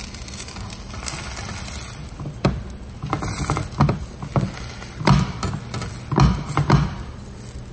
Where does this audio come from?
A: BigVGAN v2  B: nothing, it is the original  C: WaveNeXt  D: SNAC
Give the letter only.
B